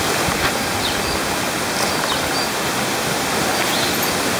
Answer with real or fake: real